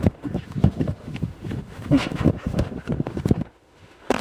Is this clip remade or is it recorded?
remade